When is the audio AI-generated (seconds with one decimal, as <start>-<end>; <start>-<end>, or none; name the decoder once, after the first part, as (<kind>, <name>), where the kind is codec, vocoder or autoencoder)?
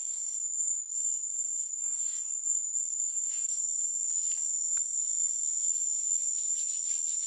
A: 0.0-3.6 (codec, DAC)